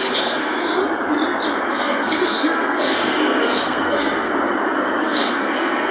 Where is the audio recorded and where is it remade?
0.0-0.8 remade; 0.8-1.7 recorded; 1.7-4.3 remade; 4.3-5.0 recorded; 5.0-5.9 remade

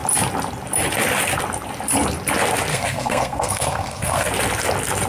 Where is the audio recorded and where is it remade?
0.0-2.7 recorded; 2.7-4.3 remade; 4.3-5.1 recorded

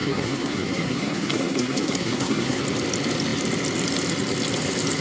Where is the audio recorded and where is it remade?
0.0-2.6 remade; 2.6-5.0 recorded